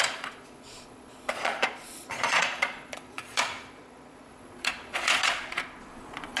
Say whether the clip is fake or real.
fake